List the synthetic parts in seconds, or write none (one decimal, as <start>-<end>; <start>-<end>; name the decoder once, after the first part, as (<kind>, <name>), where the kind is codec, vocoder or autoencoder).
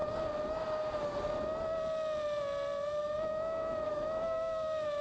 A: 3.0-5.0 (autoencoder, DAC-VAE)